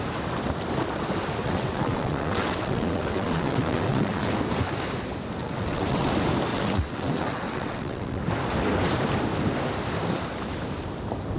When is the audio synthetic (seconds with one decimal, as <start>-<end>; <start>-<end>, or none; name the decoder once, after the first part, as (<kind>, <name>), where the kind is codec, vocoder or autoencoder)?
1.4-4.4 (vocoder, WaveNeXt); 5.4-6.1; 6.5-8.2